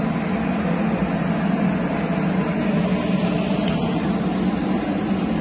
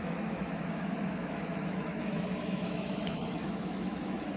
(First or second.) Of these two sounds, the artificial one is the second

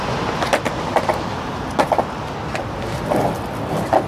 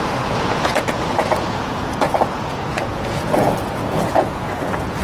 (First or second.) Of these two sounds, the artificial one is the second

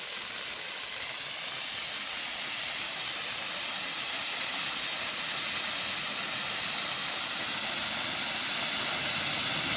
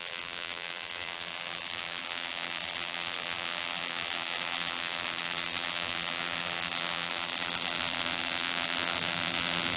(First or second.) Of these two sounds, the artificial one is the second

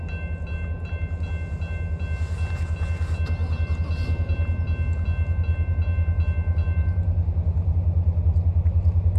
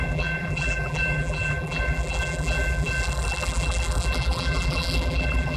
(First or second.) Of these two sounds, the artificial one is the second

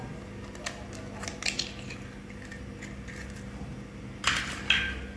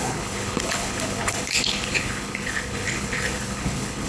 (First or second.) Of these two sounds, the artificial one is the second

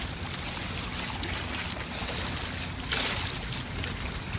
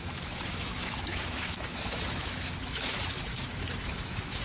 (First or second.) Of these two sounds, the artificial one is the second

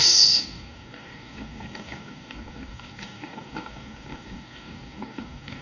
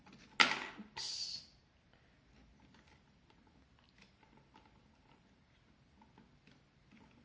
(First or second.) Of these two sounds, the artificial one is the first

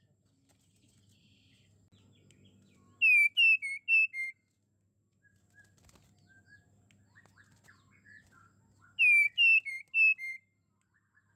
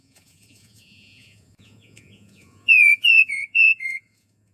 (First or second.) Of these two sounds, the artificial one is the second